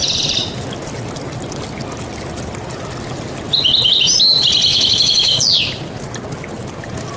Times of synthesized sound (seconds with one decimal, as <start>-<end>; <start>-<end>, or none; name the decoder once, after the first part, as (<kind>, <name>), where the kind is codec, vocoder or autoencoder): 4.7-5.4 (codec, DAC)